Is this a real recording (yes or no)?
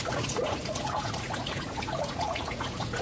no